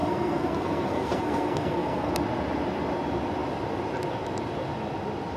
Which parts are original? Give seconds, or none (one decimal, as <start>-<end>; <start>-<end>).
2.1-5.4